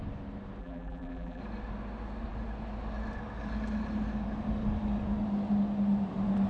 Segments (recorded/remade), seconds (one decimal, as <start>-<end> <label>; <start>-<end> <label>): 0.0-0.6 recorded; 0.6-1.4 remade; 1.4-6.5 recorded